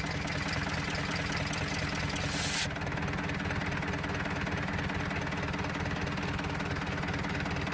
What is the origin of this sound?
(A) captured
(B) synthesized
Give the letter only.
A